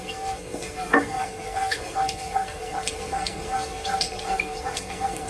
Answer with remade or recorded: remade